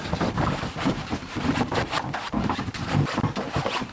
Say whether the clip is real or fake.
real